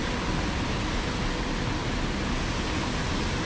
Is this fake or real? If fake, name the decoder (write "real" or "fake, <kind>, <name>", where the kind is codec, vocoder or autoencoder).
real